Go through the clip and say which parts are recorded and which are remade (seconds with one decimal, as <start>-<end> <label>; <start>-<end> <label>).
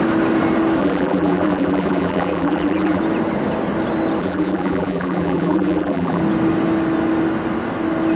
0.0-0.8 recorded; 0.8-3.0 remade; 3.0-4.2 recorded; 4.2-6.2 remade; 6.2-8.2 recorded